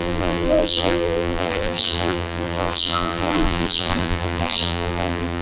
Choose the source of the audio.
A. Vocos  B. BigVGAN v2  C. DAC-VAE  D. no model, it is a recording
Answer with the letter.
B